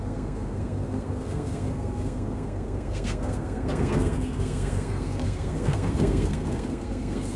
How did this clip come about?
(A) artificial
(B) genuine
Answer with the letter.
A